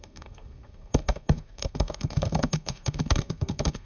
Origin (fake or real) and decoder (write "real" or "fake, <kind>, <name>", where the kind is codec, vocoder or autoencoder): fake, codec, SNAC